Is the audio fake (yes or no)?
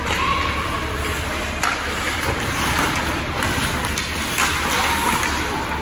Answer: no